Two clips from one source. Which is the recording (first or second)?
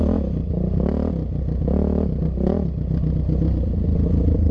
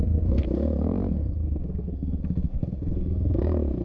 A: first